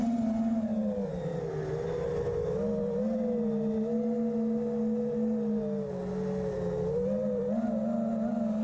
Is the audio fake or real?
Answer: real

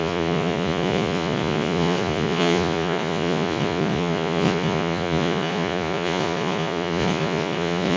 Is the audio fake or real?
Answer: fake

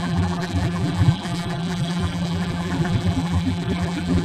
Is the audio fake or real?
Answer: fake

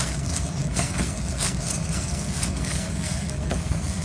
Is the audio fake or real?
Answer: fake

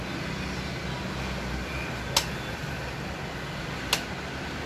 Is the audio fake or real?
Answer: real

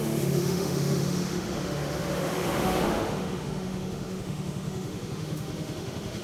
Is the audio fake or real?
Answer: fake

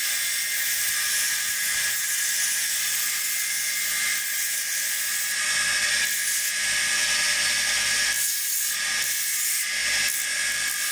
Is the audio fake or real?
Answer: real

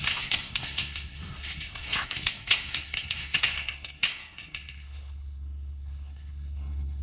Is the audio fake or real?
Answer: fake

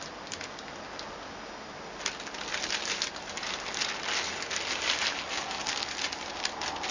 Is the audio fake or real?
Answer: real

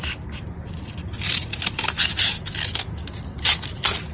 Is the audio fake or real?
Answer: real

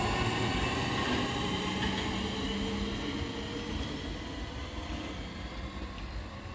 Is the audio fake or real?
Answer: real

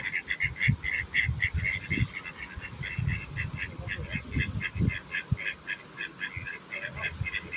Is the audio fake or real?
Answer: real